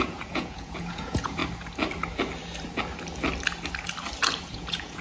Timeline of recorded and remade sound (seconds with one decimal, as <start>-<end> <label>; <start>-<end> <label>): 0.0-1.4 remade; 1.4-4.4 recorded; 4.4-5.0 remade